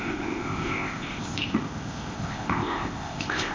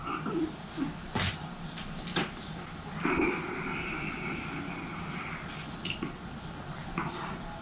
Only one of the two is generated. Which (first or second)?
first